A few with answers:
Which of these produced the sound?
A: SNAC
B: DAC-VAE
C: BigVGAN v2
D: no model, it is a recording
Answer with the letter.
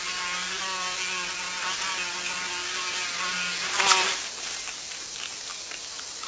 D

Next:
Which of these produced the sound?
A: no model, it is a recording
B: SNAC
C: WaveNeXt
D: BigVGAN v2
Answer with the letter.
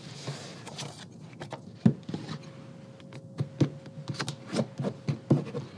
A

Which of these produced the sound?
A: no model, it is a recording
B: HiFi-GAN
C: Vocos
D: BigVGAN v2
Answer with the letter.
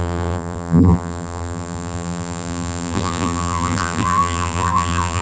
D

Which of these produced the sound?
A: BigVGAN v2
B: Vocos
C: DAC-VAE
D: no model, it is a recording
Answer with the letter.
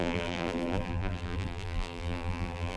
A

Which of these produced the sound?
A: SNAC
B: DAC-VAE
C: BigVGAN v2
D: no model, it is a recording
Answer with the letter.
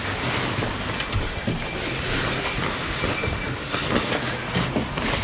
D